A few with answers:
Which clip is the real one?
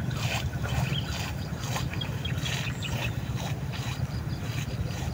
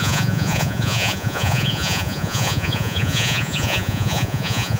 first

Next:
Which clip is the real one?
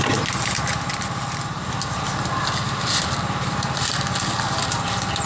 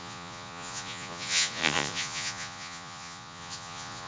first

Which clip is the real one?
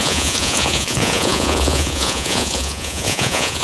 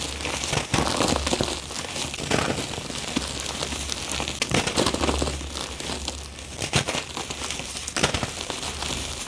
second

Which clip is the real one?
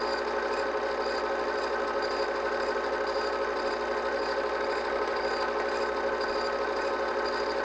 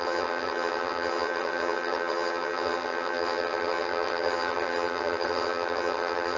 first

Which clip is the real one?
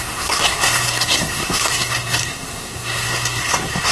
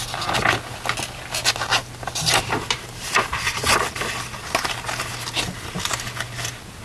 second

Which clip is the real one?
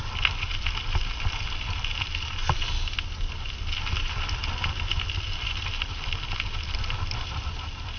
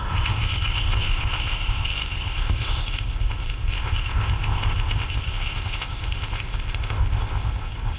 first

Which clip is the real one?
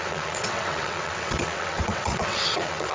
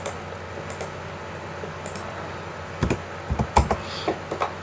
second